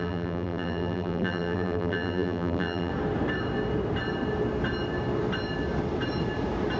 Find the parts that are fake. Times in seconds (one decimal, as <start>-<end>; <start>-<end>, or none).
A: 0.0-2.9

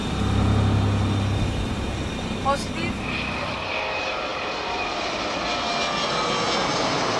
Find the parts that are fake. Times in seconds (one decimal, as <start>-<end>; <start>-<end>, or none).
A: 4.3-5.5

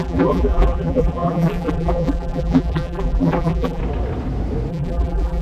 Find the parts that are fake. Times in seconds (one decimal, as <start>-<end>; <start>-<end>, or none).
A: 0.0-3.8; 4.7-5.4

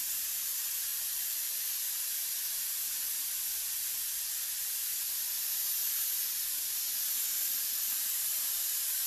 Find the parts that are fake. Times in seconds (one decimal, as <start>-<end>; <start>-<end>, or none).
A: 0.9-1.7